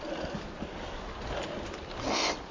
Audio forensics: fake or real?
real